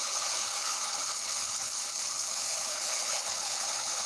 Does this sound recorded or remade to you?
remade